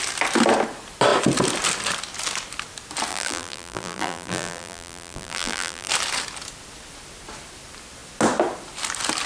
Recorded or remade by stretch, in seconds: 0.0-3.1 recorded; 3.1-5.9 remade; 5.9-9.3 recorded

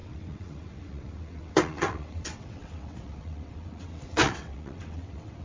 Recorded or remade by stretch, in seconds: 0.0-5.4 remade

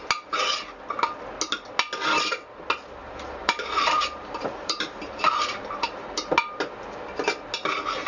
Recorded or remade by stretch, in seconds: 0.0-3.0 recorded; 3.0-6.3 remade; 6.3-8.1 recorded

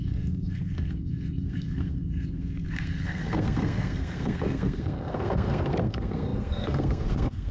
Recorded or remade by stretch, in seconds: 0.0-7.5 remade

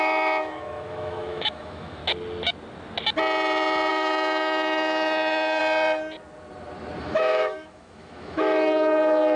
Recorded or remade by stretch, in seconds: 0.0-2.0 remade; 2.0-3.9 recorded; 3.9-5.6 remade; 5.6-7.0 recorded; 7.0-9.4 remade